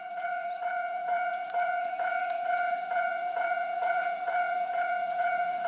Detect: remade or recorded remade